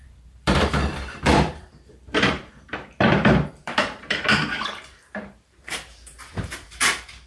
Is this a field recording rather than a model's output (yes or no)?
no